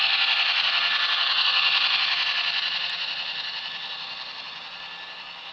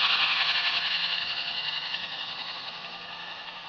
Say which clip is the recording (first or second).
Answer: first